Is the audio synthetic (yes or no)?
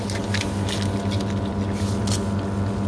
no